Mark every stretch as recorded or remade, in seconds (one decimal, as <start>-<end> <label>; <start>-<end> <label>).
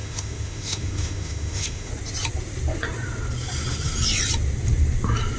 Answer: 0.0-1.9 remade; 1.9-5.4 recorded